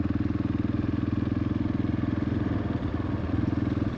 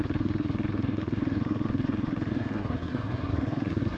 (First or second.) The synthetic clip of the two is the second